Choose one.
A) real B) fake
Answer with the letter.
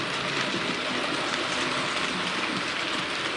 A